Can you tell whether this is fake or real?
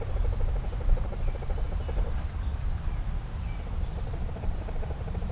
real